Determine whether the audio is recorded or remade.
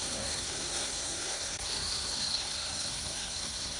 remade